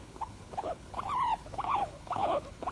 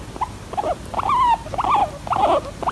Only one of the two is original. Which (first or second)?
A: second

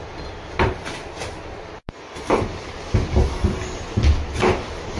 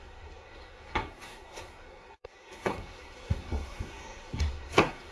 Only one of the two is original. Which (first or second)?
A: first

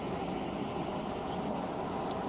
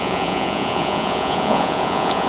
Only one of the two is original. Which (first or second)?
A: first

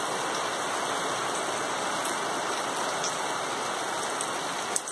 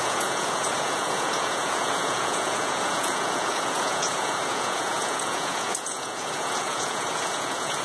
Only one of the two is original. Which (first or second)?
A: first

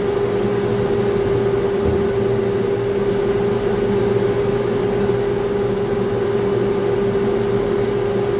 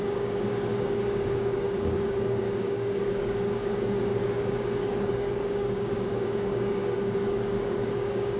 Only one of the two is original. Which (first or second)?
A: first